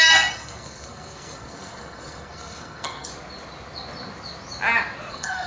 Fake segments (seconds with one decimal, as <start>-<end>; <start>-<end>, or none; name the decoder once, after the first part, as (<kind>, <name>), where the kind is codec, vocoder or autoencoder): 0.0-3.1 (codec, SNAC); 5.1-5.5